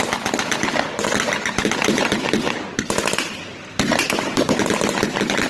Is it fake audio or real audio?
real